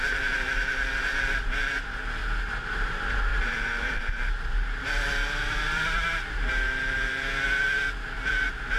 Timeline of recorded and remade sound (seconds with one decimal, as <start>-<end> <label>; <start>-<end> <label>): 0.0-2.2 remade; 2.2-2.7 recorded; 2.7-7.3 remade; 7.3-8.3 recorded; 8.3-8.8 remade